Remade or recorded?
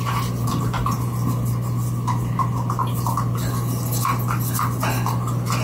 recorded